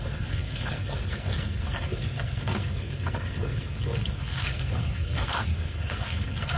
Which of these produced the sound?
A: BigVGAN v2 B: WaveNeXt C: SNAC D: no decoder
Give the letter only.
C